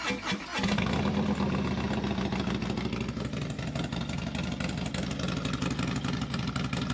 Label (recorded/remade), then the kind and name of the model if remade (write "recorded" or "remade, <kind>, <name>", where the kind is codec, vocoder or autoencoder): recorded